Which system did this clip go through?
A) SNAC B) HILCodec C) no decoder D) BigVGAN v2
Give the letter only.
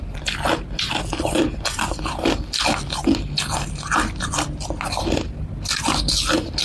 C